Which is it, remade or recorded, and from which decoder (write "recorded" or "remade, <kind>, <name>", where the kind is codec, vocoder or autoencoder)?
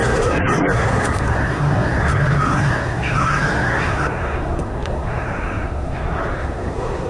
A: remade, codec, SNAC